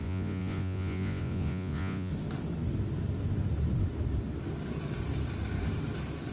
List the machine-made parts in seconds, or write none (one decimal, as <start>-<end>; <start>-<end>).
0.0-2.1